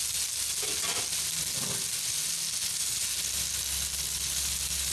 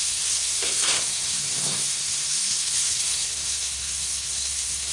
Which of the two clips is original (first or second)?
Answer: first